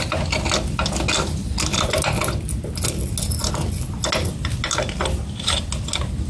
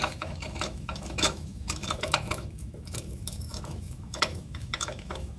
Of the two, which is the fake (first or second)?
second